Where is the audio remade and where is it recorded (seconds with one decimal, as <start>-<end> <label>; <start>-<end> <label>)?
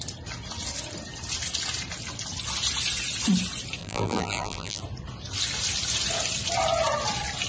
0.0-3.8 recorded; 3.8-4.8 remade; 4.8-7.5 recorded